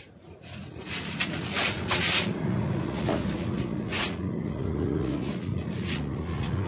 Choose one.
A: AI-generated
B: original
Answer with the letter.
A